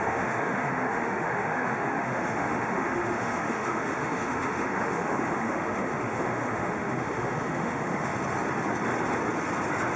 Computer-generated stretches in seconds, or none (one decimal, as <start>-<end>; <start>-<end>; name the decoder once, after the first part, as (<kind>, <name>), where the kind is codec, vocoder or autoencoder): 0.0-8.1 (autoencoder, DAC-VAE)